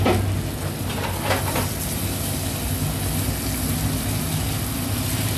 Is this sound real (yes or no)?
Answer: yes